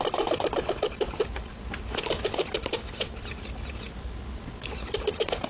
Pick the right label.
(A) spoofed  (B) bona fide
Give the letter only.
B